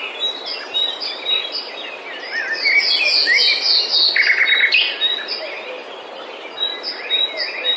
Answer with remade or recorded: recorded